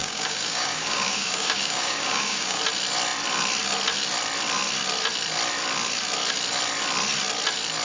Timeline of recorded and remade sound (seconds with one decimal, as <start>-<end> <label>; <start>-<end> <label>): 0.0-2.6 remade; 2.6-7.8 recorded